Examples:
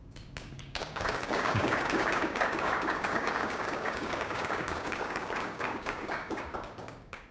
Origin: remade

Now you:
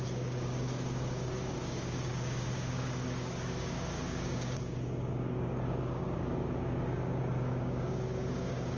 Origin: remade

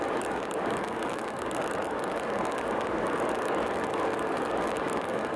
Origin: remade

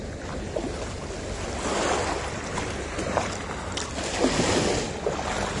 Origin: recorded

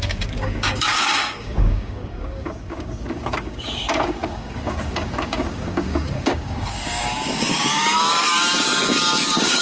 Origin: remade